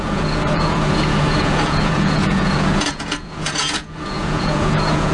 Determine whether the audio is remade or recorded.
remade